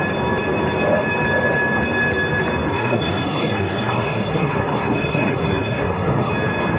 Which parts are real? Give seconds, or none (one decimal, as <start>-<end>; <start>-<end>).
0.0-2.7; 6.3-6.8